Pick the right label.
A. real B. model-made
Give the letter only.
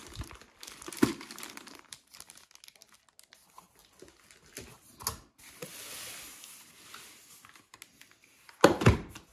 A